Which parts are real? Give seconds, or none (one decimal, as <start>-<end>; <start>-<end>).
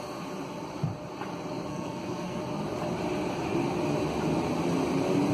0.0-1.7; 2.4-5.3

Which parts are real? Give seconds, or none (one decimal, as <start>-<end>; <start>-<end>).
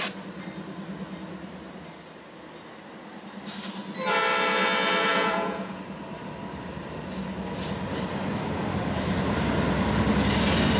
0.0-5.1; 5.8-10.8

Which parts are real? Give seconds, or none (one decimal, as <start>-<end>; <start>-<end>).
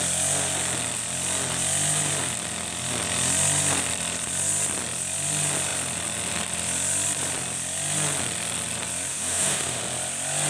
0.0-9.1; 9.8-10.5